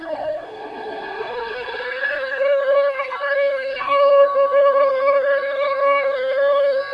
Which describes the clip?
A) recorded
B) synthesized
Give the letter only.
B